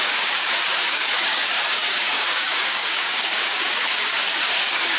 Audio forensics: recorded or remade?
remade